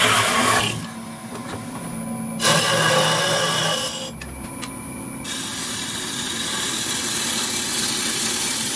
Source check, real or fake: real